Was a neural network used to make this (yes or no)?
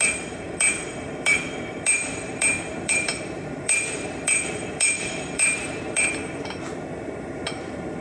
yes